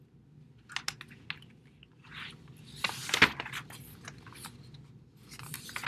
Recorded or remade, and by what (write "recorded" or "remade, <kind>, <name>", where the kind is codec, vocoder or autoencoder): recorded